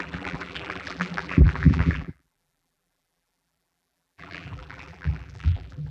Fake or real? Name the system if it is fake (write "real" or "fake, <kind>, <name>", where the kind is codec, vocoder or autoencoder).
fake, vocoder, BigVGAN v2